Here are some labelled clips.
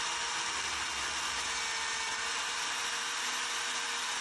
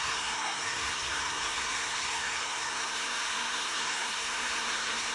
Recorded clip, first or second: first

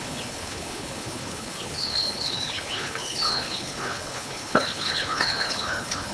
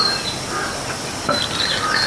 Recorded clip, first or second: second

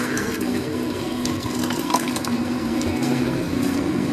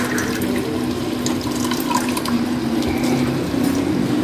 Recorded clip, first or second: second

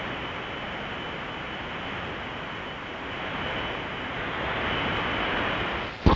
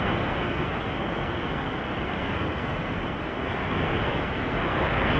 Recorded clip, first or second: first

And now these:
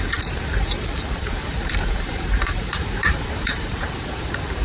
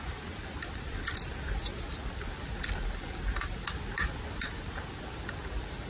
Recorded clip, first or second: second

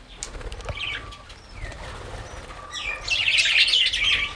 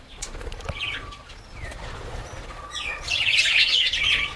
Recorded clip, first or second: first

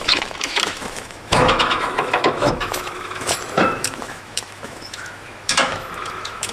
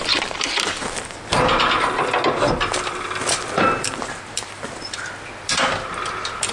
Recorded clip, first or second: second